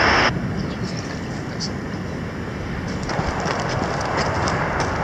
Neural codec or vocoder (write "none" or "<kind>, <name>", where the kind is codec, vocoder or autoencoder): none